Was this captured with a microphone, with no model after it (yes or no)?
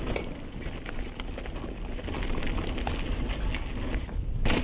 yes